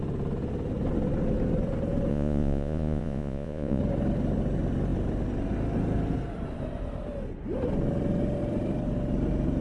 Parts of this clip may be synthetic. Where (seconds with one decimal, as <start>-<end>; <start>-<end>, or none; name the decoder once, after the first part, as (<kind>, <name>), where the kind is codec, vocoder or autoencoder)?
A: 2.1-3.8 (vocoder, Vocos)